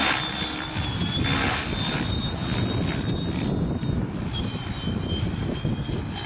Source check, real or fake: real